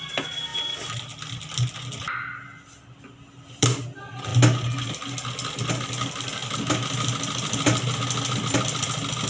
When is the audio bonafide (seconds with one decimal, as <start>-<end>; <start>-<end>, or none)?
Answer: 0.0-9.3